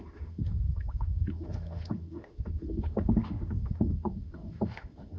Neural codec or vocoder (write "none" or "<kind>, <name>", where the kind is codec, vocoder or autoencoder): autoencoder, DAC-VAE